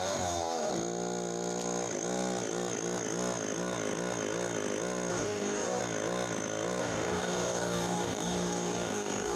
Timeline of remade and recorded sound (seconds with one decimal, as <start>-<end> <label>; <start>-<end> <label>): 0.0-0.7 remade; 0.7-5.1 recorded; 5.1-5.8 remade; 5.8-6.8 recorded; 6.8-9.4 remade